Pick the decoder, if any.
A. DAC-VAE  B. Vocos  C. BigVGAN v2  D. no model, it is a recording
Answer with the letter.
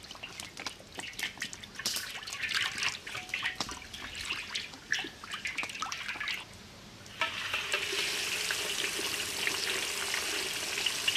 D